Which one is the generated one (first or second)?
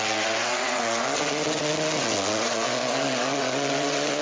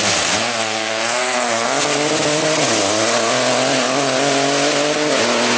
first